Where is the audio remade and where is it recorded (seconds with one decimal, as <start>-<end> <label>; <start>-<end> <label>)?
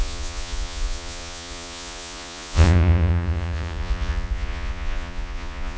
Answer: 0.0-5.8 remade